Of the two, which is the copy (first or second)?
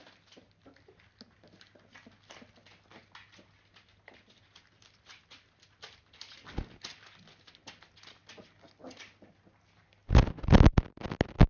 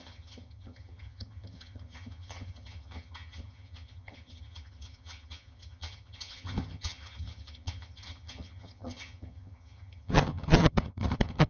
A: second